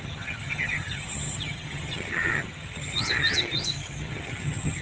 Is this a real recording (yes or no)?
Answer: no